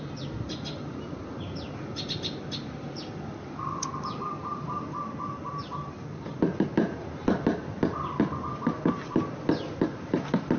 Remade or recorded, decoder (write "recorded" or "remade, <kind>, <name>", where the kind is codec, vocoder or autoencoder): recorded